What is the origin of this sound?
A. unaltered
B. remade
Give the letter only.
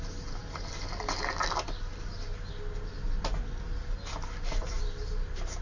A